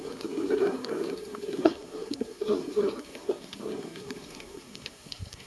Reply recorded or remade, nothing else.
remade